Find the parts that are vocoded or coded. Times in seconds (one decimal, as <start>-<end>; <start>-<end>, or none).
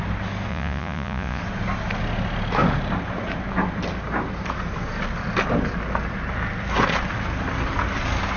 0.5-1.4